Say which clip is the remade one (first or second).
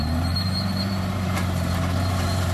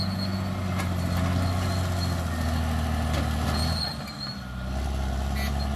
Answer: first